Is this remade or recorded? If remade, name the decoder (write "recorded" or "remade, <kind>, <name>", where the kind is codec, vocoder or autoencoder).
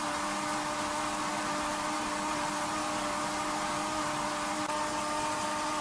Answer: recorded